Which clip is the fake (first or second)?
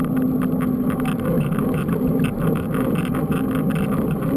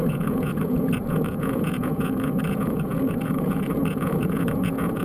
second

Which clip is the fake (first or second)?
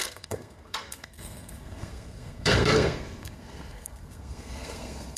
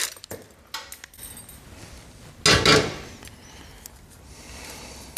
first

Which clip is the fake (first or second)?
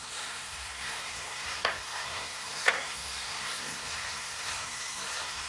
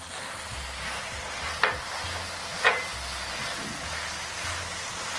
first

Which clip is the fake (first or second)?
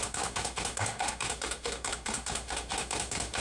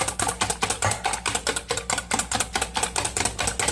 first